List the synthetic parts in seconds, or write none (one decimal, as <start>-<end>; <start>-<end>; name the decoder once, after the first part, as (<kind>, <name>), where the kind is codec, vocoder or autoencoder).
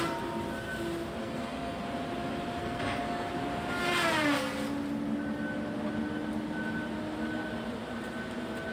1.2-1.8 (codec, SNAC); 2.6-3.3